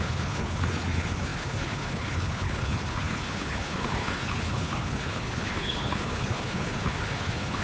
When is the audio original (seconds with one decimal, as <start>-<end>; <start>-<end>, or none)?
none